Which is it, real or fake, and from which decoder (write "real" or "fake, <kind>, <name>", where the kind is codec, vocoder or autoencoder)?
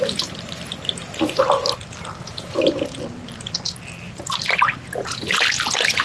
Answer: real